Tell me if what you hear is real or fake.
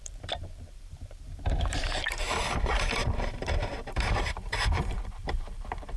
fake